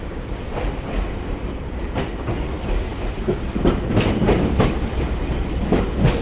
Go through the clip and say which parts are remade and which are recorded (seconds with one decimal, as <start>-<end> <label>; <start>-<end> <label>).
0.0-6.2 remade